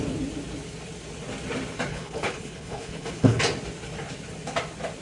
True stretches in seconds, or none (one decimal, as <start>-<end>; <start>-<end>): 0.0-1.9; 3.4-5.0